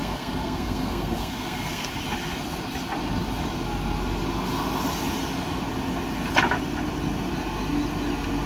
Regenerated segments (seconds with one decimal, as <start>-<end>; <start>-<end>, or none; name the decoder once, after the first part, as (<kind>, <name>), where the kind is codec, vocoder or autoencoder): 0.0-1.9 (codec, SNAC)